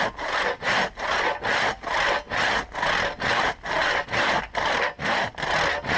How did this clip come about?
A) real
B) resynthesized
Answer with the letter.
A